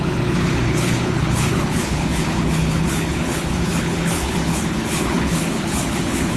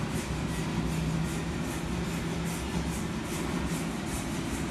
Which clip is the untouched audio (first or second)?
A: second